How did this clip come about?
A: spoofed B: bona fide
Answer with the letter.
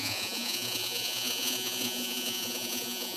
A